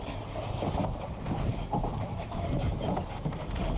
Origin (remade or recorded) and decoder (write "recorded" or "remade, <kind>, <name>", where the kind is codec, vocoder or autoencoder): recorded